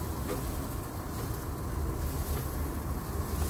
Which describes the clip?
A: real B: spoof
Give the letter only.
A